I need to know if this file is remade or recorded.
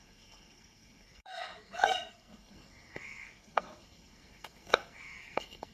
remade